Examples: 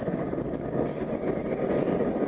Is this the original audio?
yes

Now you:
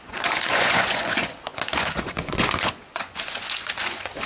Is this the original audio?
no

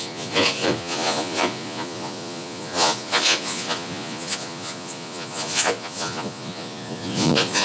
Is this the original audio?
no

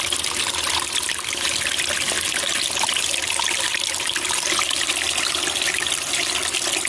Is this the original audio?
yes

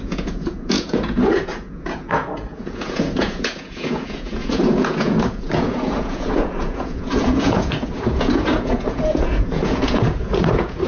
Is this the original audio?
no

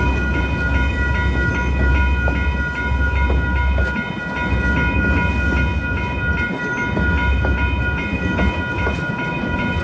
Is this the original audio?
yes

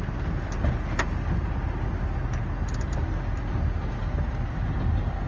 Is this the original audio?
yes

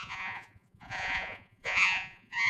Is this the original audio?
no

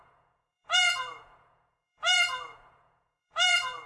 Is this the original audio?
no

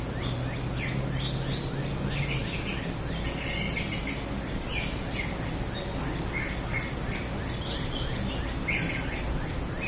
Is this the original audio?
yes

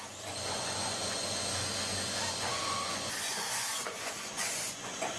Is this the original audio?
no